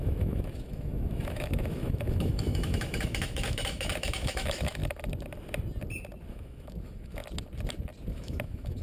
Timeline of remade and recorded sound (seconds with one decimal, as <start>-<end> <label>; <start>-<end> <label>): 0.0-4.8 remade; 4.8-6.3 recorded; 6.3-7.2 remade; 7.2-8.1 recorded; 8.1-8.8 remade